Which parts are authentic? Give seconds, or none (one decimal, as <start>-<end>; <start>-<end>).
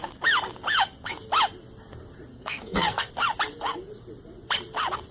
0.0-2.3; 3.1-5.1